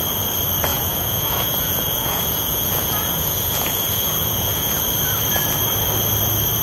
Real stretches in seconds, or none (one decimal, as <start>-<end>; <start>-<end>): 0.0-0.7; 4.7-6.6